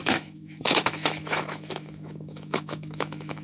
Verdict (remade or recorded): remade